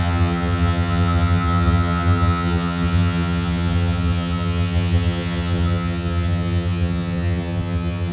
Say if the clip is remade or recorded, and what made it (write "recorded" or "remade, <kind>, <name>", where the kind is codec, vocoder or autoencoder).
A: remade, vocoder, HiFi-GAN